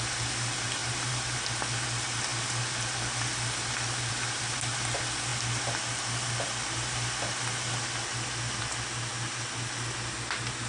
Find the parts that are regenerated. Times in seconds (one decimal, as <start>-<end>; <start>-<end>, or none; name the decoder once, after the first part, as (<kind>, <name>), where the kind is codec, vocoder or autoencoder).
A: 0.8-1.4 (vocoder, BigVGAN v2)